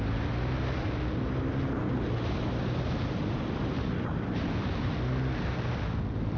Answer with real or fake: real